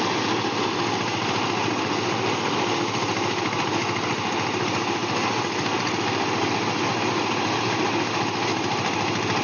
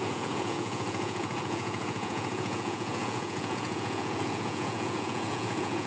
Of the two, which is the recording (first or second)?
first